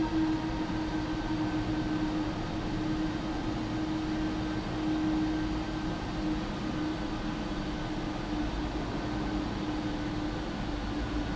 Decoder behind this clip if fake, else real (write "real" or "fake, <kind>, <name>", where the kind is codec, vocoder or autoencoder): real